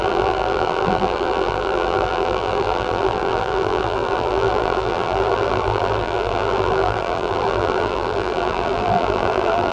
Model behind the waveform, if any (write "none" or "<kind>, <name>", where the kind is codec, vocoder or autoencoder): vocoder, BigVGAN v2